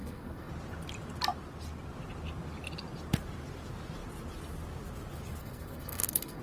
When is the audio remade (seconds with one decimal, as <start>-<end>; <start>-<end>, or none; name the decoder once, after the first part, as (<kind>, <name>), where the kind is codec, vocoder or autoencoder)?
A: 0.0-0.5 (codec, SNAC); 5.4-6.4